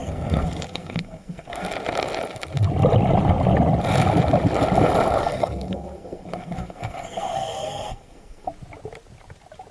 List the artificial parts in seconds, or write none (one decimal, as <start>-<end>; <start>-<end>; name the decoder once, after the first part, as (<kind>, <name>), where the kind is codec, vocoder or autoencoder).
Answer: 0.0-1.7 (codec, SNAC); 5.2-8.5